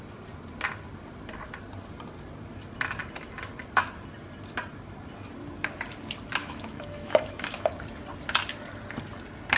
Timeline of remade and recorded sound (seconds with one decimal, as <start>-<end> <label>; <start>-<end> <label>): 0.0-6.4 recorded; 6.4-7.7 remade; 7.7-9.6 recorded